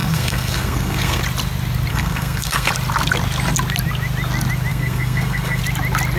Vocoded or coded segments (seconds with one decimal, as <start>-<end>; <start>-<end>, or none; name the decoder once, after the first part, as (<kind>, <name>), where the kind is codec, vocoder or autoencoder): 0.0-1.2 (codec, SNAC); 1.9-2.7; 4.7-5.6